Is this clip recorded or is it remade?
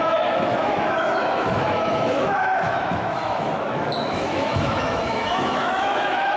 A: remade